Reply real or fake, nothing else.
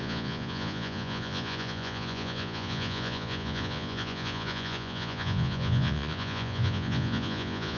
fake